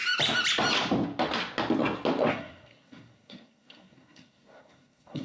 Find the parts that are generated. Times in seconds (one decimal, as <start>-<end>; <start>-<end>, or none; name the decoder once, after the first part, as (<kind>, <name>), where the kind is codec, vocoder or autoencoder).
2.3-5.2 (codec, SNAC)